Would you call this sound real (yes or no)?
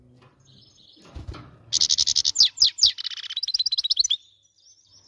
yes